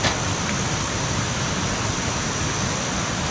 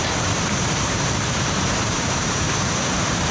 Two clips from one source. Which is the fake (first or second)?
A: second